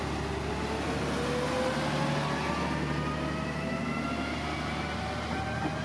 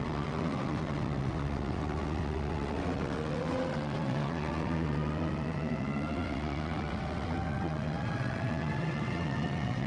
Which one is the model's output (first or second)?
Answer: second